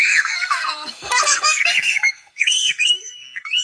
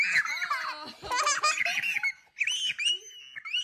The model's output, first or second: first